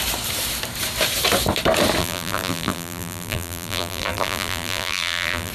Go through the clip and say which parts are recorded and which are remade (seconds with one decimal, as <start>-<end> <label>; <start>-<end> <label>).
0.0-2.0 recorded; 2.0-5.5 remade